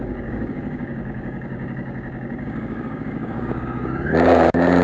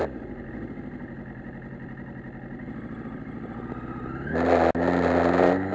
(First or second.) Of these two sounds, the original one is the second